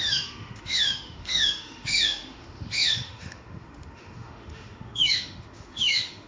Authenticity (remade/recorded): remade